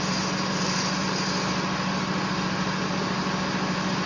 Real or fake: real